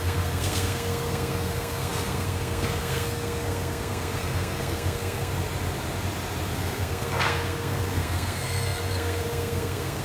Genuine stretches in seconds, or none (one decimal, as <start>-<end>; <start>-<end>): 5.3-6.5